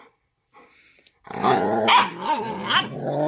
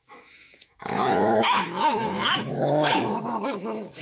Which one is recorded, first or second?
first